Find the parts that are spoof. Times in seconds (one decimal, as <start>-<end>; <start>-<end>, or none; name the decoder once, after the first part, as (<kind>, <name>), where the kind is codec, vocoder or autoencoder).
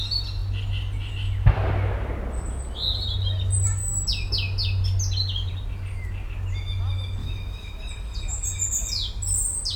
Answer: 7.2-7.8 (autoencoder, DAC-VAE)